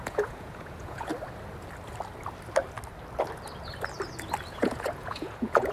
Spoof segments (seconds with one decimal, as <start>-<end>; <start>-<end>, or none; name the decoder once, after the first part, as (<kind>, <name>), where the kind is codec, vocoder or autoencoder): 0.0-1.1 (vocoder, Vocos); 4.5-5.7